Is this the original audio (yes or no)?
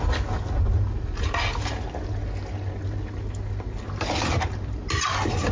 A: yes